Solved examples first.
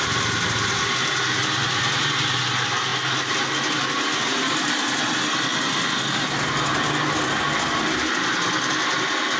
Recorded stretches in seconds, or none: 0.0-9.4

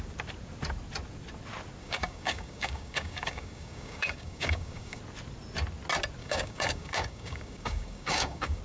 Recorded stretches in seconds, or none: 0.0-1.8; 5.0-6.2

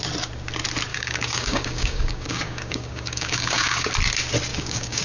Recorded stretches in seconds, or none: 0.0-0.9; 3.9-4.5

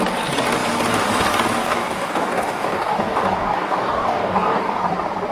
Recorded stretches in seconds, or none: 0.0-1.6; 4.8-5.3

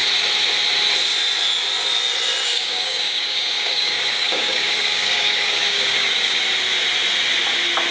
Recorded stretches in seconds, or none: 0.0-2.4; 6.4-7.9

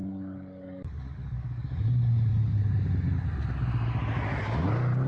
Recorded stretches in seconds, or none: 1.8-5.1

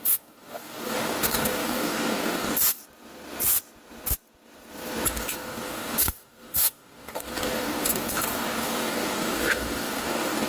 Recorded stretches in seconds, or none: 2.8-5.1